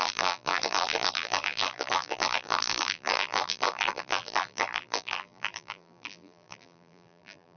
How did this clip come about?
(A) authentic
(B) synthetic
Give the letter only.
B